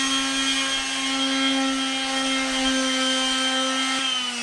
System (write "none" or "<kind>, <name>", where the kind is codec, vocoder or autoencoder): none